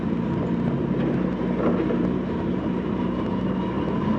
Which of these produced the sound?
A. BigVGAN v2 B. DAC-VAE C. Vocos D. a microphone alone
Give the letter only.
D